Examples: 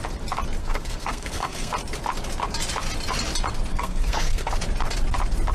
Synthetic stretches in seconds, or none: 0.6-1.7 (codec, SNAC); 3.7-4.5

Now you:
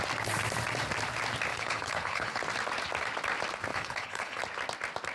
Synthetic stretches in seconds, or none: 1.5-2.4 (codec, HILCodec); 3.7-4.4

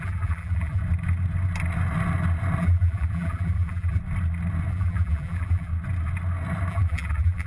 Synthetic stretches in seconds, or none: 0.0-0.8 (vocoder, BigVGAN v2); 2.6-4.0; 4.7-5.7; 6.7-7.5

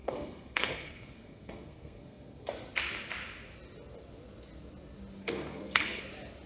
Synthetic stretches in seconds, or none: 0.0-2.5 (codec, SNAC); 5.2-6.0